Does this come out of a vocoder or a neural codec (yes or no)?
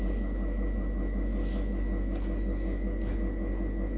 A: no